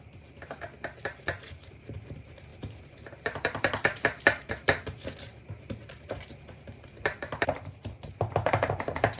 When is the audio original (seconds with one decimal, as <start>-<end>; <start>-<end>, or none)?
none